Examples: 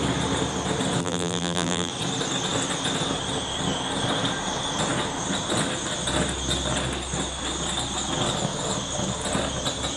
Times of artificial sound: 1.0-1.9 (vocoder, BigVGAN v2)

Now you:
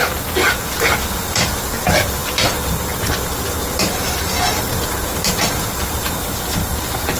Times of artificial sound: none